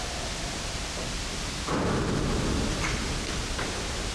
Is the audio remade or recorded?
recorded